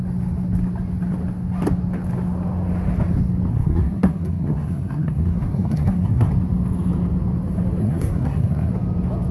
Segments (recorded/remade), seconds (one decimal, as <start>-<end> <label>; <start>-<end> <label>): 0.0-3.5 recorded; 3.5-6.3 remade; 6.3-7.8 recorded; 7.8-8.7 remade; 8.7-9.3 recorded

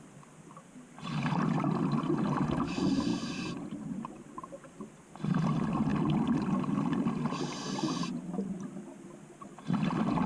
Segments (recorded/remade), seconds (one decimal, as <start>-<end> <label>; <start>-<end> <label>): 0.0-10.3 recorded

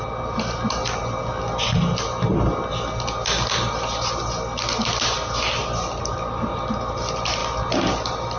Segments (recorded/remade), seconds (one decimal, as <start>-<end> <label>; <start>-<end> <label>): 0.0-8.4 recorded

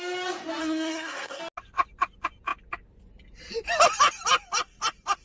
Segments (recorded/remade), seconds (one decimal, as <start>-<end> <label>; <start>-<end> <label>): 0.0-0.6 recorded; 0.6-1.4 remade; 1.4-5.2 recorded

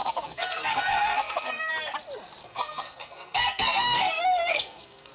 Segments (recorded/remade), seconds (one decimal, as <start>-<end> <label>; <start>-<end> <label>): 0.0-1.7 remade; 1.7-2.4 recorded; 2.4-5.1 remade

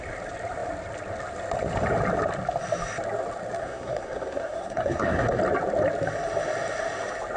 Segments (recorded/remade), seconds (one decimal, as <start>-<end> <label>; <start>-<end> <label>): 0.0-3.6 recorded; 3.6-5.4 remade; 5.4-7.4 recorded

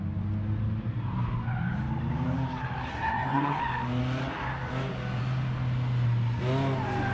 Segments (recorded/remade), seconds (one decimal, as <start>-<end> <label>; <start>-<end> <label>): 0.0-2.9 recorded; 2.9-3.6 remade; 3.6-7.1 recorded

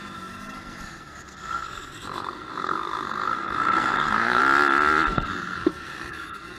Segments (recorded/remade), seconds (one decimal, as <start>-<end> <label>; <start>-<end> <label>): 0.0-4.4 remade; 4.4-5.1 recorded; 5.1-6.6 remade